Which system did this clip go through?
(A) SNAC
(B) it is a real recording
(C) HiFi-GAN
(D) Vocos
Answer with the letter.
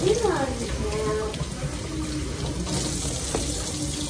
B